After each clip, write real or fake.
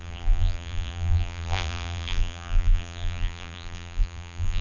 fake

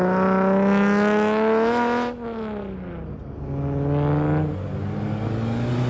real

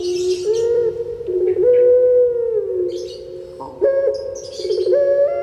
real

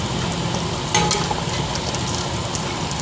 real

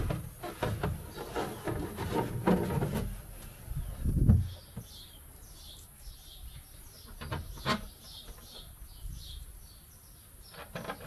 real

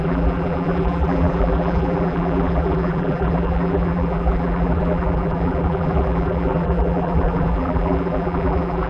fake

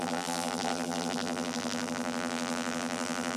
fake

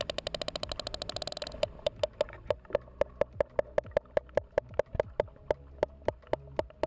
real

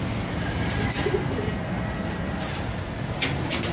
real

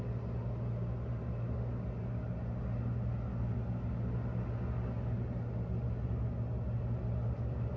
real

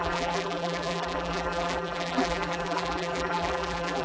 fake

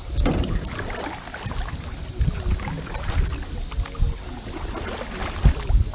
real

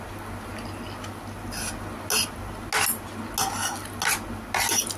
real